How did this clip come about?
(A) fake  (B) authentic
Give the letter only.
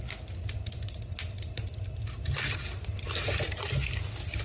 B